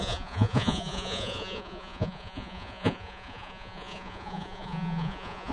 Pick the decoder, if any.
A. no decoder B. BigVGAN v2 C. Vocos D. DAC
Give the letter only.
C